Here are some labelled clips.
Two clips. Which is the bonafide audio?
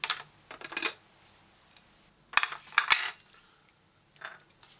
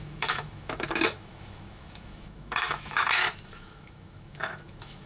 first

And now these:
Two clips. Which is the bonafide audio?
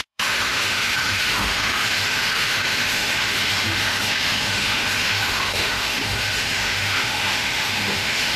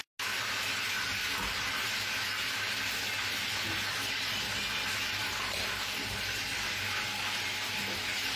second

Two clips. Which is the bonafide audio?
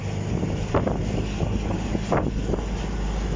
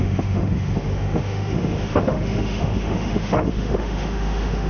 first